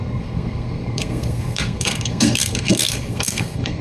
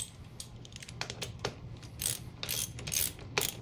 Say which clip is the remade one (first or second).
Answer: first